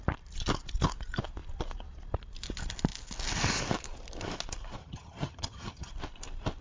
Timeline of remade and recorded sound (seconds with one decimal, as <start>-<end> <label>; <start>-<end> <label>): 0.0-4.8 recorded; 4.8-5.9 remade; 5.9-6.6 recorded